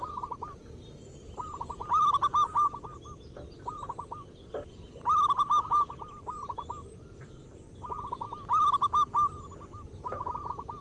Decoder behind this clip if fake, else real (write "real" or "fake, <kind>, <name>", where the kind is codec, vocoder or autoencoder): real